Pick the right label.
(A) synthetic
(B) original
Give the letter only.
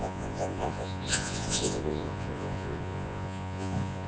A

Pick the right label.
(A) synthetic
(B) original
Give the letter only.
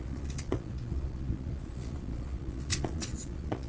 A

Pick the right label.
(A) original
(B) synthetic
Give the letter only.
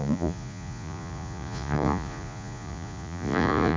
B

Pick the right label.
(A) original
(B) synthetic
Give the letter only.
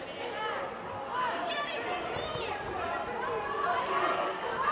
A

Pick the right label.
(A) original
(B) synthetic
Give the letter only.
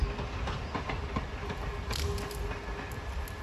A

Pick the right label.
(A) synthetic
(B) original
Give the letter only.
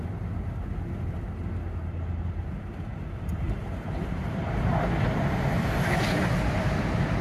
B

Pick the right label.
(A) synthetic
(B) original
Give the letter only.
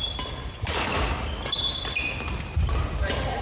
B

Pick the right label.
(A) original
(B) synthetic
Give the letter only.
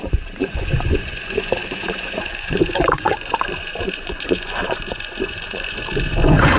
B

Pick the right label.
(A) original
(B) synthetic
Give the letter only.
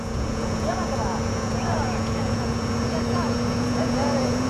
B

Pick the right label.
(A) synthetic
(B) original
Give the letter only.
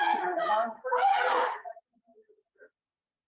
A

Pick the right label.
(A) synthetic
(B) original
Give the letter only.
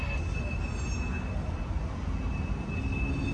B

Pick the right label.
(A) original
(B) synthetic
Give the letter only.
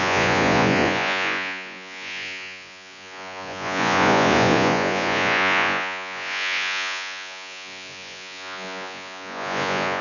B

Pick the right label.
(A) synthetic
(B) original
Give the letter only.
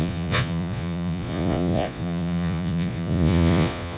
A